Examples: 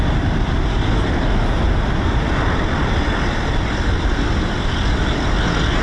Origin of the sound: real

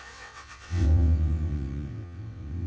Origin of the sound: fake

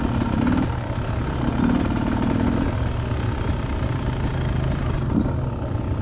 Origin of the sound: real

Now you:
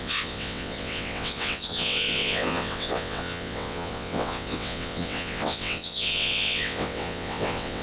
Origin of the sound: fake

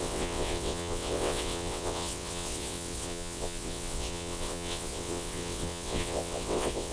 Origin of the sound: fake